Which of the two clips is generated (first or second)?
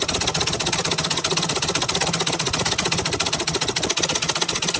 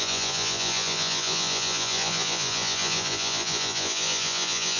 second